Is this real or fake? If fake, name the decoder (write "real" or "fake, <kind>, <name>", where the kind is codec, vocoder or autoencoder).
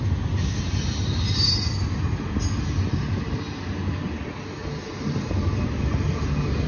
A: real